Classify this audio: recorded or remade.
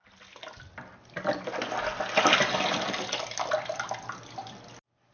recorded